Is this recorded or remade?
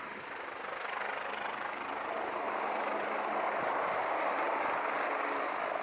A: recorded